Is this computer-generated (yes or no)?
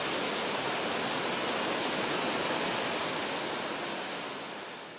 no